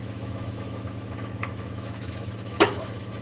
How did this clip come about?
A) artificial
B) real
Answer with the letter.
A